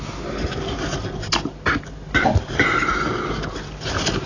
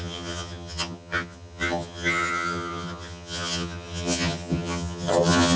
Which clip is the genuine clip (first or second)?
first